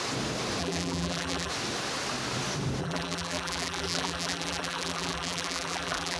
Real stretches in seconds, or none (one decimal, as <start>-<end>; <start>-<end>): 0.0-0.6; 1.5-2.8